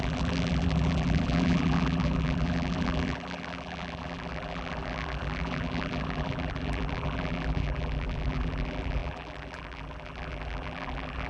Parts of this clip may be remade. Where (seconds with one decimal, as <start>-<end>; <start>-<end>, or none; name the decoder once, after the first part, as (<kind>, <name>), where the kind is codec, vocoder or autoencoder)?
0.0-11.3 (vocoder, BigVGAN v2)